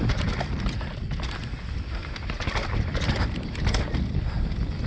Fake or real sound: real